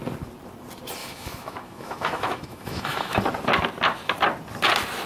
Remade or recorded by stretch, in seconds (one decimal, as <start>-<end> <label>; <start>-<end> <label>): 0.0-1.0 recorded; 1.0-3.2 remade; 3.2-5.1 recorded